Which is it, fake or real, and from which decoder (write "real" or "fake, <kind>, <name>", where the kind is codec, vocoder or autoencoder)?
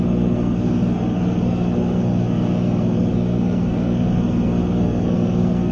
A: fake, codec, SNAC